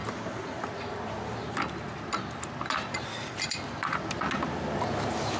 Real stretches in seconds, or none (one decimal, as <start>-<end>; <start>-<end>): 0.0-5.4